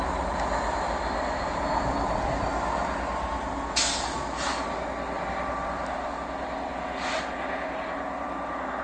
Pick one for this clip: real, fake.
real